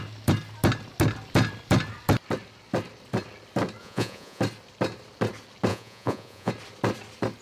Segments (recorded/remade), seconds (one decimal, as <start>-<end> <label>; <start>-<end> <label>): 0.0-3.8 recorded; 3.8-4.4 remade; 4.4-5.7 recorded; 5.7-6.5 remade; 6.5-7.4 recorded